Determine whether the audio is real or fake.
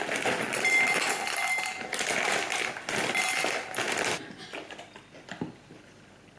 real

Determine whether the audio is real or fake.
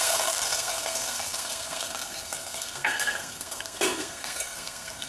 fake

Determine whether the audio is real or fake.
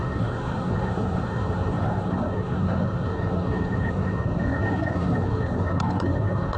fake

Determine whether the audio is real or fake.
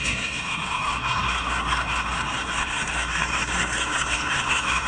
fake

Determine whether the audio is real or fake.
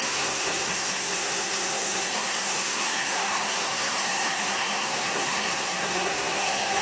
fake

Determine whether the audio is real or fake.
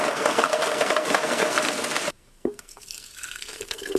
fake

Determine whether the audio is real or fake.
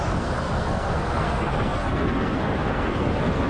fake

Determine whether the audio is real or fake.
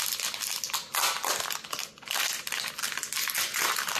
real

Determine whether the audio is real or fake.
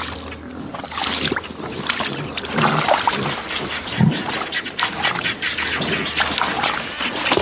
real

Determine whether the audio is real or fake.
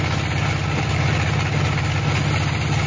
real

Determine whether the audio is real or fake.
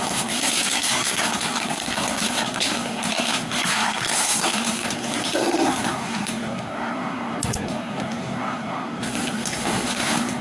fake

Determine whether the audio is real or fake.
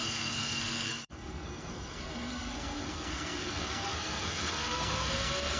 fake